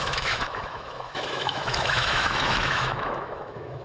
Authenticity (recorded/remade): remade